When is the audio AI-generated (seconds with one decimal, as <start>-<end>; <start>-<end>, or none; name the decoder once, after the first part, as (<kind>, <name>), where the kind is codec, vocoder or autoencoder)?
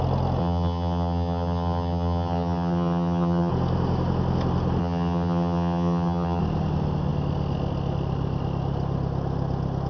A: 0.4-3.5 (vocoder, HiFi-GAN); 4.8-6.4